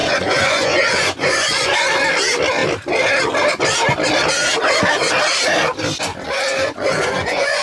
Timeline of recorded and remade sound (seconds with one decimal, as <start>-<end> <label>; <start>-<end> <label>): 0.0-1.8 remade; 1.8-6.1 recorded; 6.1-7.6 remade